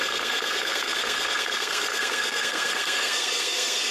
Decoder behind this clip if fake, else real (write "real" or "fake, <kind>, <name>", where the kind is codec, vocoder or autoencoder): fake, codec, SNAC